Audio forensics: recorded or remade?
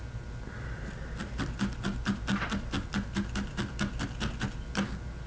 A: recorded